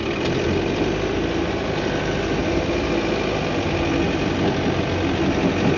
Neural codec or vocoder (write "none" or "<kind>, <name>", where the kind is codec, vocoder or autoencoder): none